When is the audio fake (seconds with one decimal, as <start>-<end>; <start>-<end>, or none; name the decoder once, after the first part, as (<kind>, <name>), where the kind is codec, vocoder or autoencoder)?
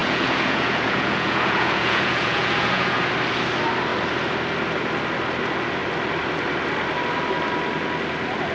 0.0-3.1 (vocoder, Vocos)